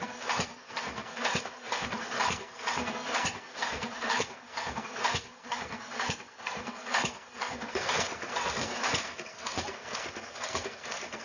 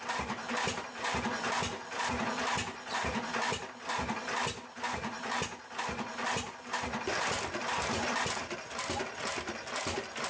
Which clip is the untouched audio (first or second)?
second